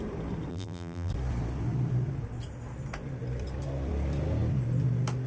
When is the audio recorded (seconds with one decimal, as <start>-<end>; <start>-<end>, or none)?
0.0-0.5; 1.1-5.3